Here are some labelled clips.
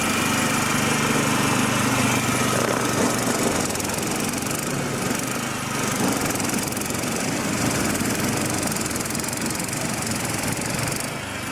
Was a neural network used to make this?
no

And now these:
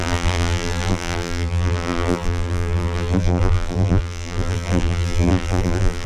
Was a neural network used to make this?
yes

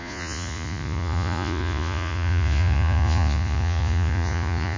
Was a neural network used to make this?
yes